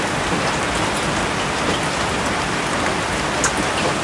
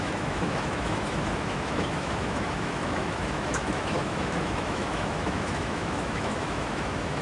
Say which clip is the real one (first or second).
first